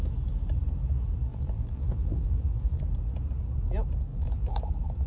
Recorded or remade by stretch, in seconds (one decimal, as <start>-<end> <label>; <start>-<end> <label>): 0.0-1.3 recorded; 1.3-2.8 remade; 2.8-4.1 recorded; 4.1-4.6 remade; 4.6-5.1 recorded